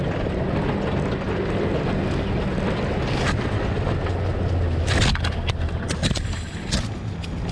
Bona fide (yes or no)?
yes